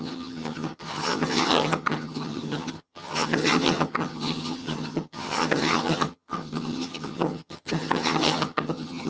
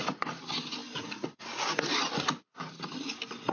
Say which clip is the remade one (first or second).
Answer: first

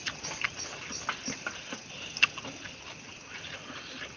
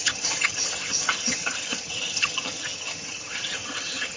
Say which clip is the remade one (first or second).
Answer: second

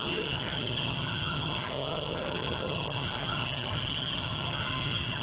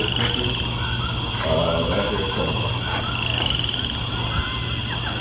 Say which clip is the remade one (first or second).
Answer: first